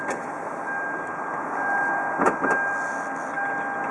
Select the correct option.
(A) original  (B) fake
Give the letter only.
A